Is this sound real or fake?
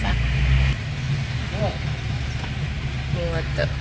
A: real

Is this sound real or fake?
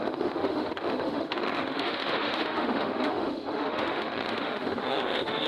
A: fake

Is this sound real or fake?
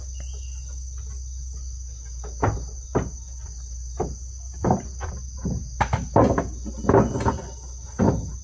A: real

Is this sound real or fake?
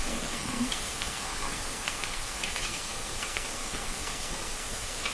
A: fake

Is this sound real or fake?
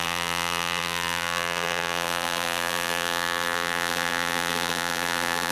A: fake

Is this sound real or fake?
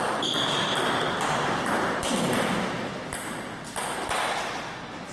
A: real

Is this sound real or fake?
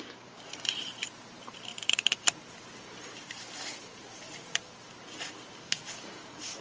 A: fake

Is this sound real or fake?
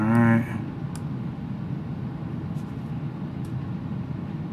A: real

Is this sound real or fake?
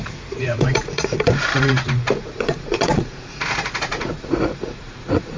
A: fake